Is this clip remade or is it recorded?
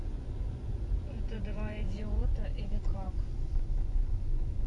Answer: remade